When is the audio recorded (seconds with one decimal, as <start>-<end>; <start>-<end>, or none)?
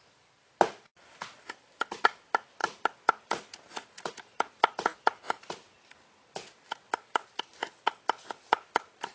0.0-9.1